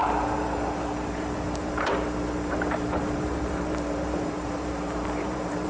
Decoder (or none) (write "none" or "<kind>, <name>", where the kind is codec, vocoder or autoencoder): vocoder, BigVGAN v2